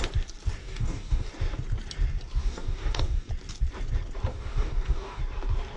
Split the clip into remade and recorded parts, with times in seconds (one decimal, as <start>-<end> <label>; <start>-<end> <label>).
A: 0.0-0.6 recorded; 0.6-1.3 remade; 1.3-2.4 recorded; 2.4-3.3 remade; 3.3-4.3 recorded; 4.3-5.2 remade; 5.2-5.8 recorded